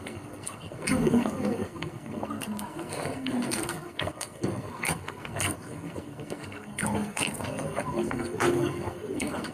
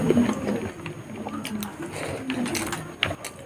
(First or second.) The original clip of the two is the second